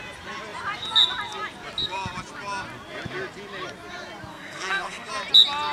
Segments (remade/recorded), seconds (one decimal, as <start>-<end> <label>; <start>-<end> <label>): 0.0-4.3 recorded; 4.3-5.1 remade; 5.1-5.7 recorded